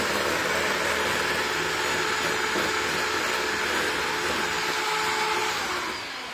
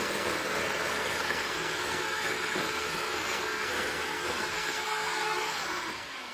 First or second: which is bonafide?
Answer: first